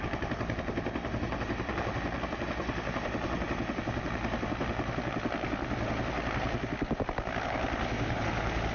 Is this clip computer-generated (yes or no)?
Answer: no